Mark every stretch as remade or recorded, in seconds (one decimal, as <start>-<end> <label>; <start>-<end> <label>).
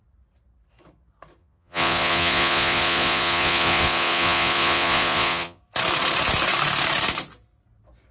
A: 0.0-1.4 recorded; 1.4-5.6 remade; 5.6-8.1 recorded